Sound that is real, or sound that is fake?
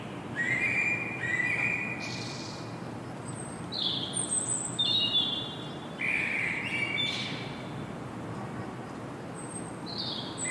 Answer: real